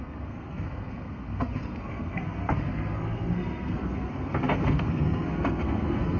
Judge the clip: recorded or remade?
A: remade